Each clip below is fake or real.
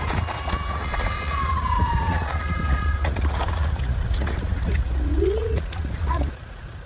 fake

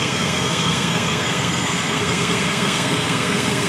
fake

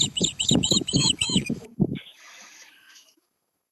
fake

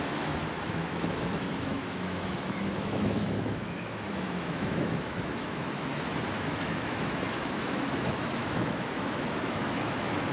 fake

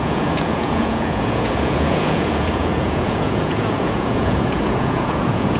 fake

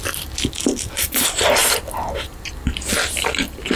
real